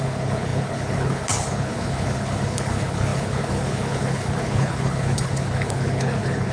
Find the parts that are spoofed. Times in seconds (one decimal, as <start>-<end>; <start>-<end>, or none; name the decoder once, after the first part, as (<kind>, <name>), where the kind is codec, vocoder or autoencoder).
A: 0.0-6.5 (codec, HILCodec)

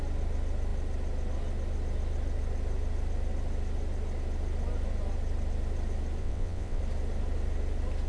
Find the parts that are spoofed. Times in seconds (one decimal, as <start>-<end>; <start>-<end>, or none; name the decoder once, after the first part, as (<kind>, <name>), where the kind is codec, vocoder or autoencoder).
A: 6.2-6.8 (vocoder, WaveNeXt)

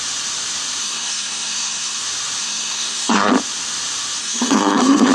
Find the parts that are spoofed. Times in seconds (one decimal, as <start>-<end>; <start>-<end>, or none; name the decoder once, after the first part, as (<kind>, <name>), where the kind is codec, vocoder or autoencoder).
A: 0.8-2.0 (codec, SNAC); 2.4-3.3; 4.2-5.1

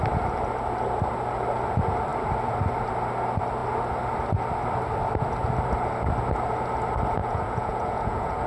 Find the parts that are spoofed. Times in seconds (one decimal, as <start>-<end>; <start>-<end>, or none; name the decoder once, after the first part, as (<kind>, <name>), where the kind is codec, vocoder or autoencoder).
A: 7.2-8.5 (vocoder, Vocos)

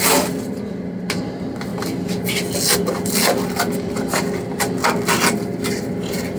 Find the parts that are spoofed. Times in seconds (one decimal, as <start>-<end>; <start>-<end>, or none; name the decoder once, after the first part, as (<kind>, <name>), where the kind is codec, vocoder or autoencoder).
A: none

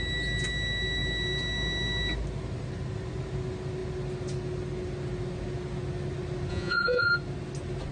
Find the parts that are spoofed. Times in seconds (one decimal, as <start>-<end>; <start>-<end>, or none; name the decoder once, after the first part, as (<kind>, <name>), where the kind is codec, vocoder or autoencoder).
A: 6.5-7.1 (vocoder, Vocos)

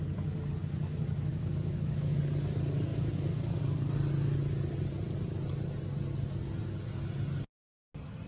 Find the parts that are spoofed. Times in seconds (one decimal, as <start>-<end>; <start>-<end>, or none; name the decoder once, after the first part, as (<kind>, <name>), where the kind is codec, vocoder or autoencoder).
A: 1.3-2.2 (autoencoder, DAC-VAE)

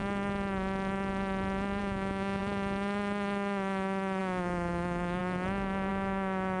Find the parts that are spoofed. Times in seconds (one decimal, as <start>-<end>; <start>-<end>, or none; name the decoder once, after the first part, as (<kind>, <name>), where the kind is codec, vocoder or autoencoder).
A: 1.8-2.4 (autoencoder, DAC-VAE); 4.2-5.2; 5.9-6.6